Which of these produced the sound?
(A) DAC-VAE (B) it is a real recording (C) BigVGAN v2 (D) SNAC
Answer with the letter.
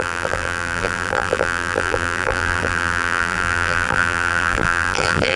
C